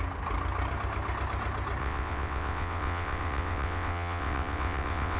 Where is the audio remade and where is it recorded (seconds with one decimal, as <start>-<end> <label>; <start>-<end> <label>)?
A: 0.0-1.8 recorded; 1.8-5.2 remade